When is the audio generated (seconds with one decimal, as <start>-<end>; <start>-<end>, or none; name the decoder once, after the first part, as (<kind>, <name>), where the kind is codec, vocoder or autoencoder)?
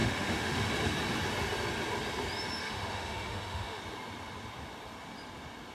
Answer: 0.0-0.7 (autoencoder, DAC-VAE); 2.6-3.8